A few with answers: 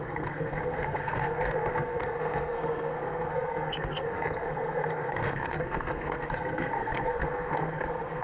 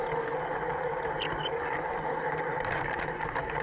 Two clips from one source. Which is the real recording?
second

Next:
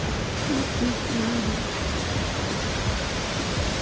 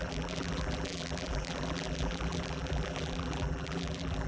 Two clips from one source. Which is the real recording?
first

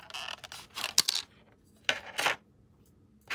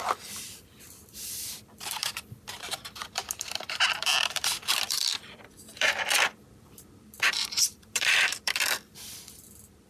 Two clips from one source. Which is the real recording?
first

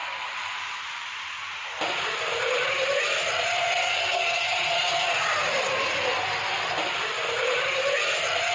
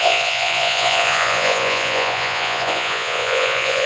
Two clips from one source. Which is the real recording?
first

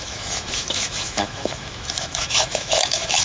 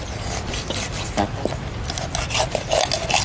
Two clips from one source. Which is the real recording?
second